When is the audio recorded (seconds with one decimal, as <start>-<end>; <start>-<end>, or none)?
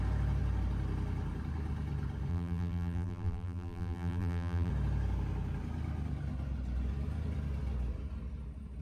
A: 0.0-2.3; 4.7-8.8